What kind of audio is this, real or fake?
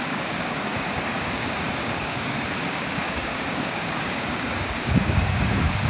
fake